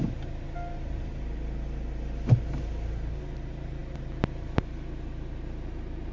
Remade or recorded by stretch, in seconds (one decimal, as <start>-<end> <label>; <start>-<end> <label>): 0.0-6.1 recorded